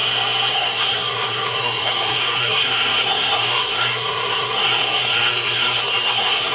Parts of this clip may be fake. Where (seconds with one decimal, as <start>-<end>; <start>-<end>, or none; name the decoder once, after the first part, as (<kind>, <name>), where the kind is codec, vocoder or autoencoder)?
0.5-6.5 (codec, SNAC)